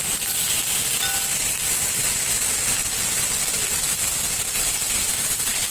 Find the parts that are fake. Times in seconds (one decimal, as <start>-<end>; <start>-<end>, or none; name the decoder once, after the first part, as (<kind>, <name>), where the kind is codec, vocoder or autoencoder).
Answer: none

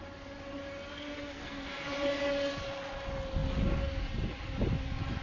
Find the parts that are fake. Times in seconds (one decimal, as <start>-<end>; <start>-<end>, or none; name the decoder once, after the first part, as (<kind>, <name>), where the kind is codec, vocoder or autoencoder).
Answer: 0.9-1.8 (codec, SNAC)

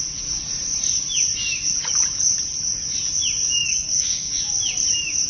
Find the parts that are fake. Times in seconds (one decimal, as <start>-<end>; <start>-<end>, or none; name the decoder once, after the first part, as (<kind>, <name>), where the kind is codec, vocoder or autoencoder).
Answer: 3.6-4.5 (codec, DAC)